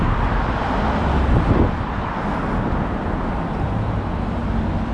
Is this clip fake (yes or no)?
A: no